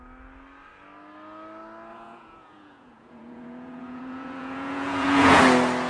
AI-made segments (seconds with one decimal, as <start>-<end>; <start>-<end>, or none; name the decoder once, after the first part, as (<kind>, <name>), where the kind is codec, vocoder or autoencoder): 1.9-5.4 (vocoder, Vocos)